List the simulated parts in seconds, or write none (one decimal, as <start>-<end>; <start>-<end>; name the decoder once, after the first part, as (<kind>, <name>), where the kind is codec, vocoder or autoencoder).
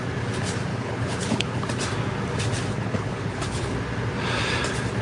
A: 0.7-1.6 (codec, HILCodec); 2.7-3.7